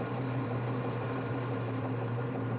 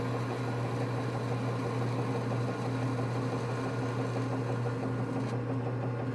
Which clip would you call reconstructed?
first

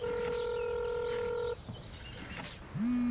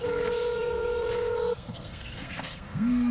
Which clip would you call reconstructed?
second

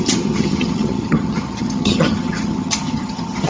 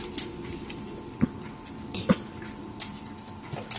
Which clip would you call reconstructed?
first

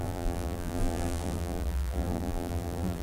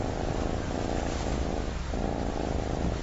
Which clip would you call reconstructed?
first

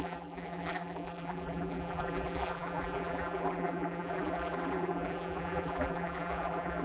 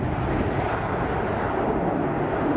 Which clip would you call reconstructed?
first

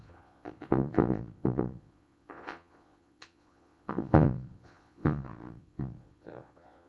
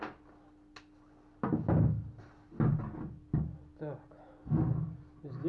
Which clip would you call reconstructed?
first